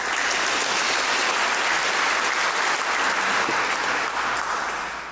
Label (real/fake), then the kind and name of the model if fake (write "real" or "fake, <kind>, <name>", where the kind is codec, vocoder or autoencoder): real